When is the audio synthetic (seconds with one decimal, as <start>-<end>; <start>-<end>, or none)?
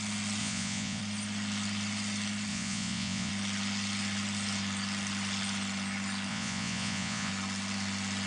0.4-1.0; 2.5-3.3; 6.3-7.3